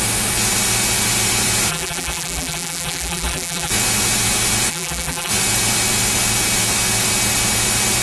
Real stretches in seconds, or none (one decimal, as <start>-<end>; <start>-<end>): 0.0-1.7; 3.7-4.7; 5.3-8.0